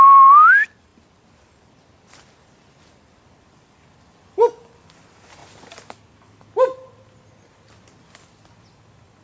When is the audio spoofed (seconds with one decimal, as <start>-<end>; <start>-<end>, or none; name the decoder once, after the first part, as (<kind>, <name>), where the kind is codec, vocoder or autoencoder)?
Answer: none